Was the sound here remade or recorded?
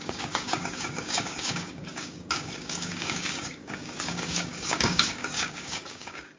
remade